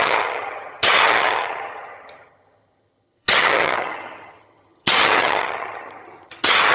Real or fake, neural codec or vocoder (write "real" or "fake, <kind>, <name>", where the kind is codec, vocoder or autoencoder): fake, vocoder, HiFi-GAN